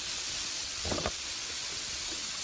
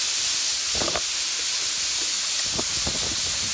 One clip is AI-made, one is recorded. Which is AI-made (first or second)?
first